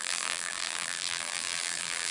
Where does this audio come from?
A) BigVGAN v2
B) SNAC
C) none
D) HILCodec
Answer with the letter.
A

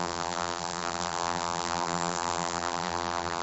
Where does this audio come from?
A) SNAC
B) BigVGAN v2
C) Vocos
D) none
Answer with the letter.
B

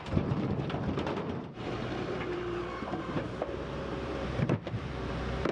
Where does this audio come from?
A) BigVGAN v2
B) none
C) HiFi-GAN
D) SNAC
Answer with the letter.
A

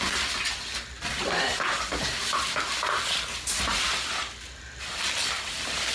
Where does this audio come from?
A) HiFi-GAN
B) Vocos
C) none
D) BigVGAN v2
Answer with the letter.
C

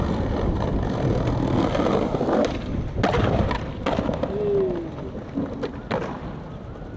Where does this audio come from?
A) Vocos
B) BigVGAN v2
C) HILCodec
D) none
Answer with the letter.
D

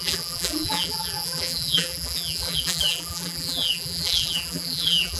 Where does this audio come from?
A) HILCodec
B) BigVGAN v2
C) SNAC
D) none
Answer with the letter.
B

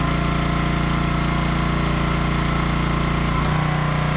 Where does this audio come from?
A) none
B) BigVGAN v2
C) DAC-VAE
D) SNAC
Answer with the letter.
A